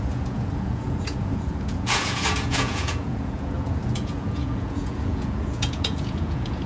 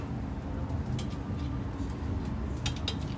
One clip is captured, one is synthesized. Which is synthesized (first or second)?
first